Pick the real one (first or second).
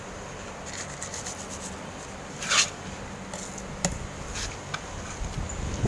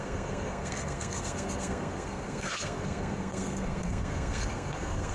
first